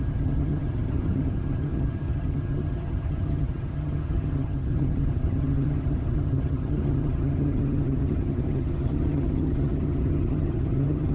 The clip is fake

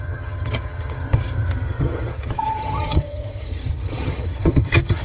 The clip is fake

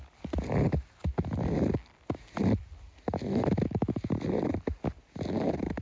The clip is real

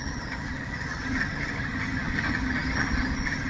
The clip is fake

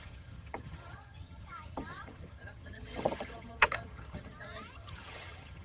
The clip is fake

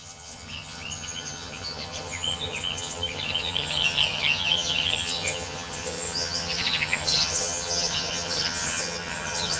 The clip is fake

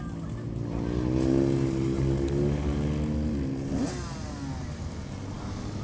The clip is real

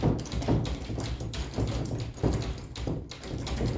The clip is real